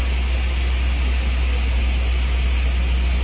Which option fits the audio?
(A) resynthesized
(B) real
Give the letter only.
B